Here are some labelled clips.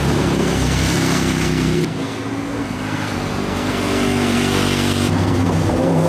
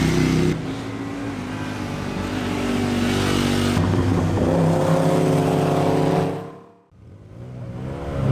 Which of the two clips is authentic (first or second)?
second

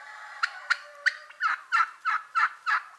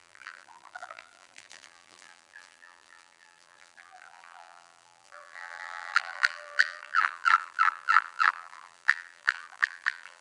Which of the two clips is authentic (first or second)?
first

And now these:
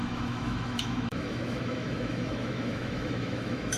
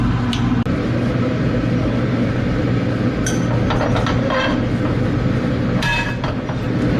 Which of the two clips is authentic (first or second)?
second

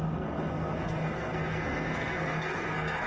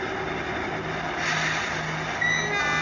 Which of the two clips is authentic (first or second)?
second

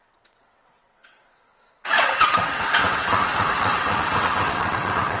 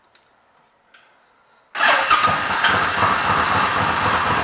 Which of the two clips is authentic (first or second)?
second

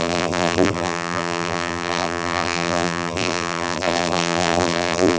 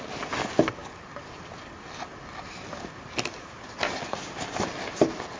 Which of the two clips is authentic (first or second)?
second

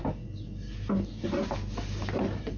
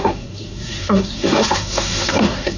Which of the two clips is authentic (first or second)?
first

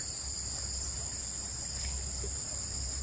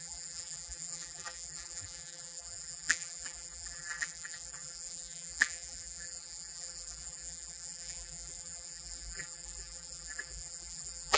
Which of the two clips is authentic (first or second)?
first